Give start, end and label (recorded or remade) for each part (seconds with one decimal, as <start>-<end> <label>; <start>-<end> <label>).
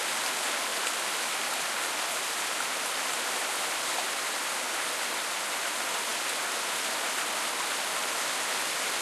0.0-9.0 recorded